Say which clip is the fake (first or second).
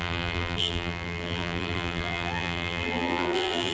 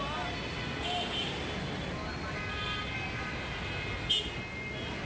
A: first